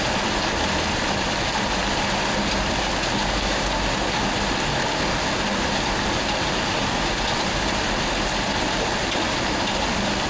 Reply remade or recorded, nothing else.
recorded